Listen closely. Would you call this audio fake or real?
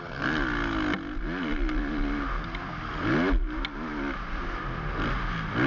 real